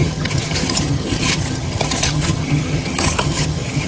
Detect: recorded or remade remade